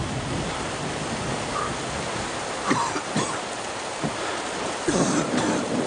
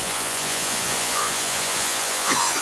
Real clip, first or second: first